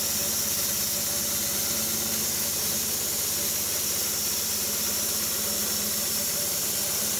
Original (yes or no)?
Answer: yes